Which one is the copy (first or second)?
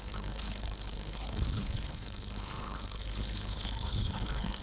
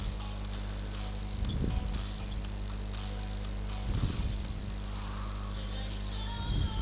first